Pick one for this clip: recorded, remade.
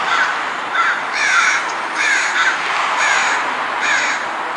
recorded